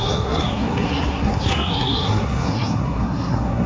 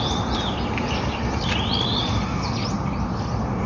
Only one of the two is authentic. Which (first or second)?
second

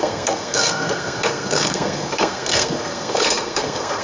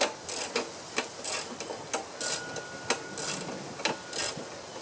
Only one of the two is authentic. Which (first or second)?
second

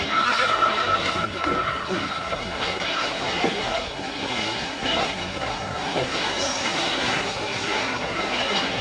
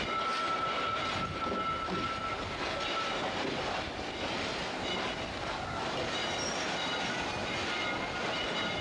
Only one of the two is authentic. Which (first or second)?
second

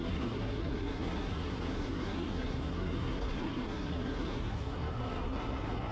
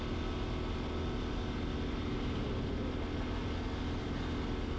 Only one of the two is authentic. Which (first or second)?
second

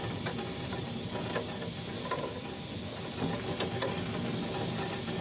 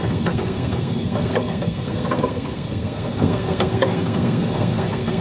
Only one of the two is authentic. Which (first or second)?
first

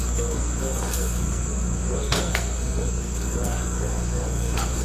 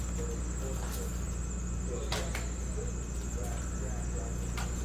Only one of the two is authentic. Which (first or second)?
second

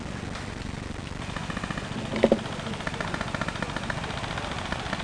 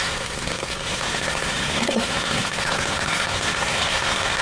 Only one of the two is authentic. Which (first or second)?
first